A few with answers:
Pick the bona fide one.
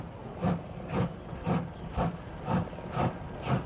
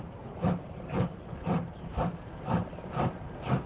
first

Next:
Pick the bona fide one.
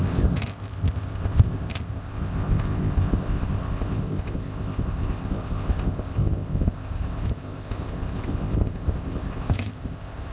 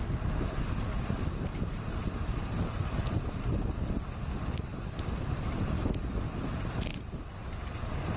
second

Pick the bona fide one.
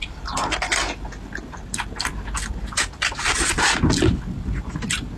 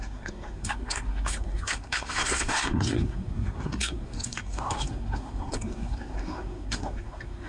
first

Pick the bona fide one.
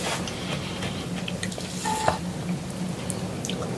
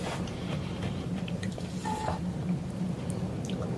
first